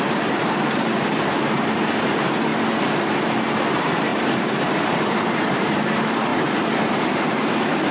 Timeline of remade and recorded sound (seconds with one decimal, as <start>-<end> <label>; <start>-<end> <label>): 0.0-2.5 remade; 2.5-3.4 recorded; 3.4-6.3 remade; 6.3-7.5 recorded; 7.5-7.9 remade